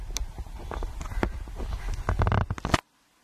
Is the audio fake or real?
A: real